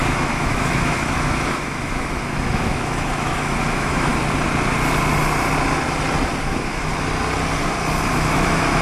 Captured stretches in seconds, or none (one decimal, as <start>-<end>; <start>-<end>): 4.1-6.4; 6.9-8.1